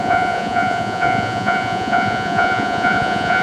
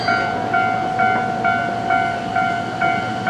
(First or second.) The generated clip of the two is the first